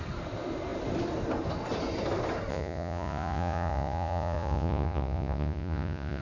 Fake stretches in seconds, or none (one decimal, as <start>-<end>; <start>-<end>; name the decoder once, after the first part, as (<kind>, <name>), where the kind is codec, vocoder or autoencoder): 2.5-6.2 (vocoder, Vocos)